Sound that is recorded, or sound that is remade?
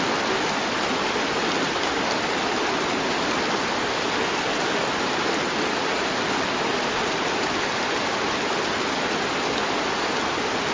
recorded